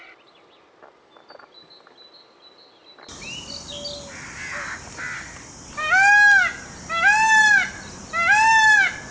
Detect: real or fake real